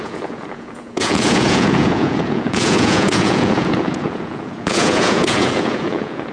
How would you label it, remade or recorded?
remade